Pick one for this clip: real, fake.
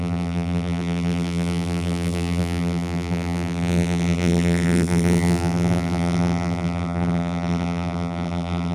fake